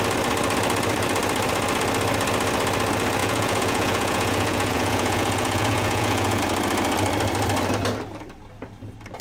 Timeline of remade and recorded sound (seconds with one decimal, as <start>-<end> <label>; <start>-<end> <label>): 0.0-3.2 recorded; 3.2-6.4 remade; 6.4-9.2 recorded